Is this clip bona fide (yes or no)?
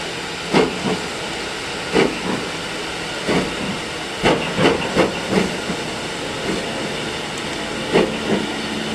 yes